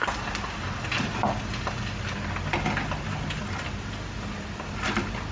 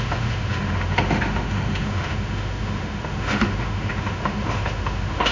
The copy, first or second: second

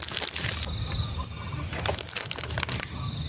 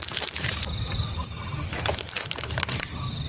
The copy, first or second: second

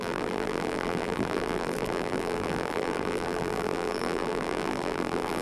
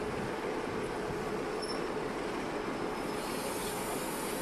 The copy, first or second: first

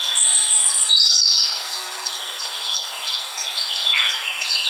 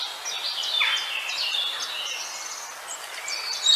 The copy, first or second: first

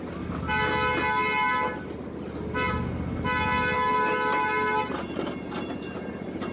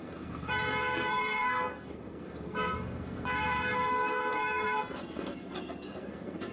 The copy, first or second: second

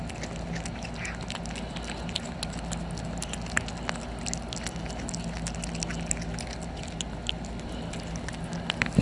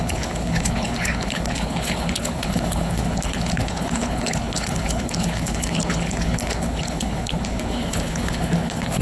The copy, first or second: second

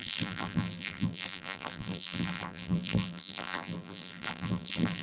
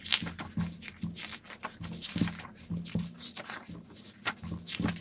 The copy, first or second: first